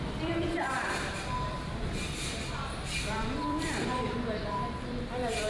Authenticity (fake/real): fake